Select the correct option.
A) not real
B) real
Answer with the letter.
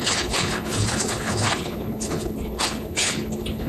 A